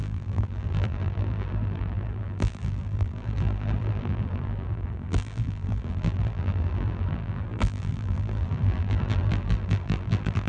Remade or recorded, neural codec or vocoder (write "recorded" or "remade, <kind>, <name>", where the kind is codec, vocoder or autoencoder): remade, vocoder, BigVGAN v2